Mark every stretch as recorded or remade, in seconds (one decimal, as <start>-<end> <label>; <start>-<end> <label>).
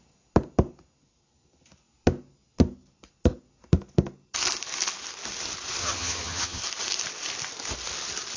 0.0-5.8 recorded; 5.8-6.6 remade; 6.6-8.4 recorded